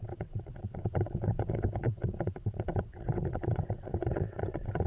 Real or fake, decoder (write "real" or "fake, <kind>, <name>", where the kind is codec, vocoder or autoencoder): fake, vocoder, WaveNeXt